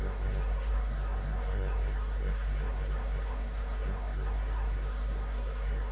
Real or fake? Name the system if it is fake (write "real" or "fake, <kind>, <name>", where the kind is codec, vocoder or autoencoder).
fake, codec, SNAC